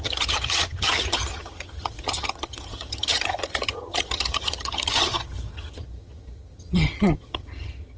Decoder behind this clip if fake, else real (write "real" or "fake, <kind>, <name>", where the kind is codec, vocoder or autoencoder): fake, vocoder, HiFi-GAN